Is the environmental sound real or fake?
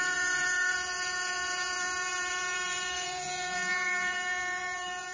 fake